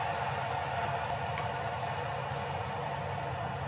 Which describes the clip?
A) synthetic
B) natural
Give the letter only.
B